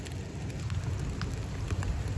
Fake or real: real